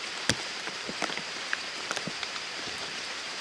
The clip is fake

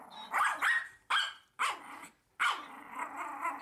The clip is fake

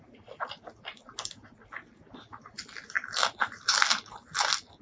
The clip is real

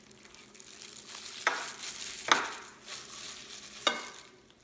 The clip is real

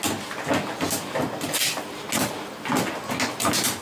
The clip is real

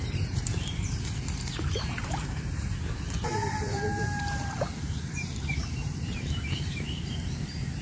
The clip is fake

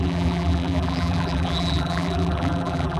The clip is fake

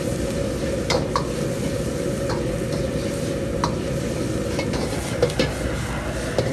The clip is real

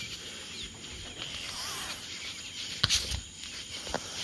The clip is real